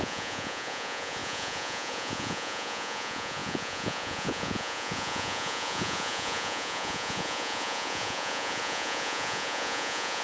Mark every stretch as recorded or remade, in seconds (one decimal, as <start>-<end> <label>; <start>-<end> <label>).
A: 0.0-10.2 remade

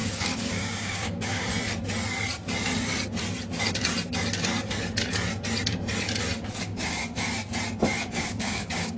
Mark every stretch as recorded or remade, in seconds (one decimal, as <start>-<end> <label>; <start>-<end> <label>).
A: 0.0-1.5 remade; 1.5-6.6 recorded; 6.6-7.0 remade; 7.0-8.0 recorded; 8.0-9.0 remade

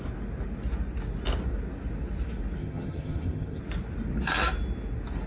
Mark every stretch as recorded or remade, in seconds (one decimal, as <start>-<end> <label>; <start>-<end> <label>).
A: 0.0-2.6 recorded; 2.6-3.6 remade; 3.6-5.3 recorded